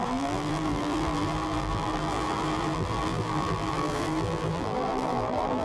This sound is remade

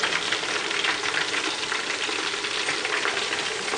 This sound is remade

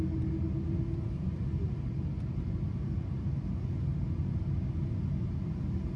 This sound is recorded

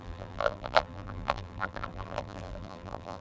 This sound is remade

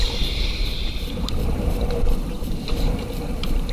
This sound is remade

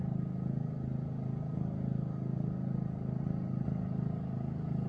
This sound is recorded